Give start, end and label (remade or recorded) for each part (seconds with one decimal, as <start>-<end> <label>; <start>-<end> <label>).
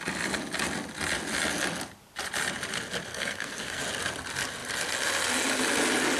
0.0-3.1 recorded; 3.1-3.8 remade; 3.8-6.2 recorded